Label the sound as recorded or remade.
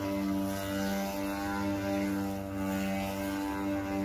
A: recorded